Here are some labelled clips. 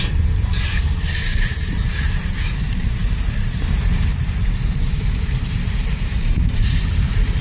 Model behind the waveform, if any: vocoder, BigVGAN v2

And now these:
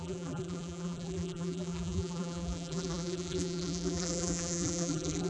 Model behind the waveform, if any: vocoder, BigVGAN v2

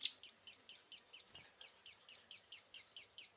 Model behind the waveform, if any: none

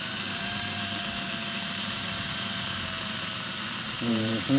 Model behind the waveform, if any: vocoder, BigVGAN v2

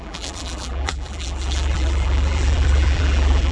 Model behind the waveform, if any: vocoder, BigVGAN v2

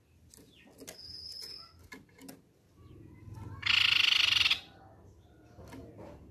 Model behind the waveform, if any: none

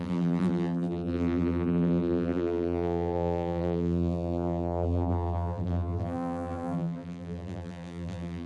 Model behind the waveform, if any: vocoder, BigVGAN v2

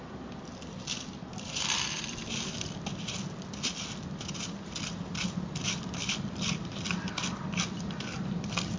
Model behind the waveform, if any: vocoder, BigVGAN v2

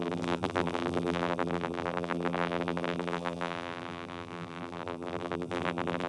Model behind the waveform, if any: vocoder, BigVGAN v2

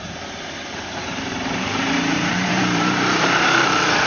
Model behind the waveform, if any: vocoder, BigVGAN v2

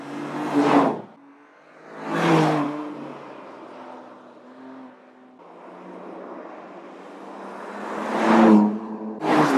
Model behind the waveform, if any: none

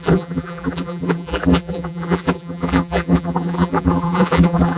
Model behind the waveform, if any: vocoder, BigVGAN v2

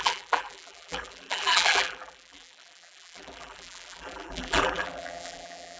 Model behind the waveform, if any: vocoder, BigVGAN v2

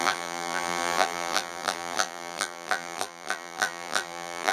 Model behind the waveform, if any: vocoder, BigVGAN v2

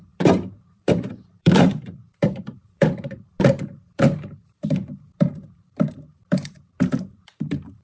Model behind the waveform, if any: vocoder, BigVGAN v2